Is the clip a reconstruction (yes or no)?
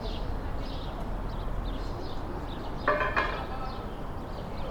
no